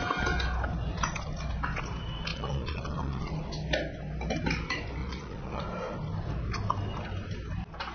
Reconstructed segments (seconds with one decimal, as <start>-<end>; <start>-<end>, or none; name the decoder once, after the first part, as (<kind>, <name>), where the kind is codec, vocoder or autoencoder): 2.3-3.3 (vocoder, Vocos); 5.0-5.6